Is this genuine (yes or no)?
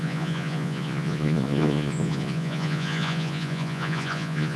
no